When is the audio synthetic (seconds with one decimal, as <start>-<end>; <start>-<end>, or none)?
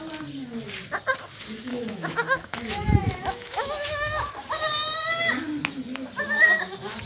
1.7-4.3